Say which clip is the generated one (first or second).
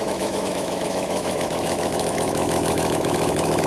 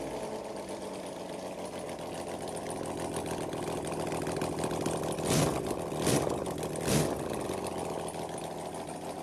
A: first